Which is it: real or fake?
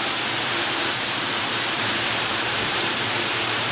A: fake